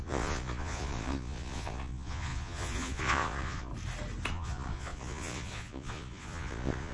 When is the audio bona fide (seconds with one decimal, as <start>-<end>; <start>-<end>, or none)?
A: 3.7-4.3